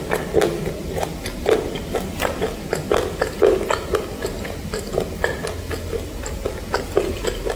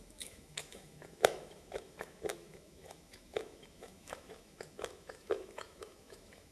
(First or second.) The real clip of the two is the first